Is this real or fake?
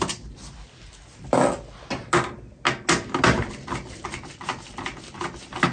real